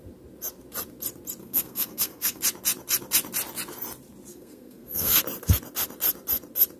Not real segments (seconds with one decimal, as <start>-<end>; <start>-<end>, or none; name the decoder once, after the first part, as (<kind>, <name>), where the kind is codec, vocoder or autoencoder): 1.4-2.4 (codec, SNAC); 4.3-5.2